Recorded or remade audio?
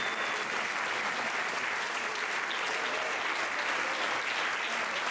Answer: recorded